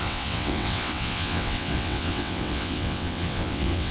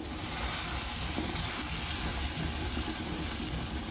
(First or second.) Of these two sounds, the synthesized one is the first